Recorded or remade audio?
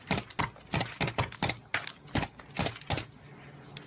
recorded